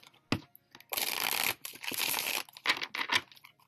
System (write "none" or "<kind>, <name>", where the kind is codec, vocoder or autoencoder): none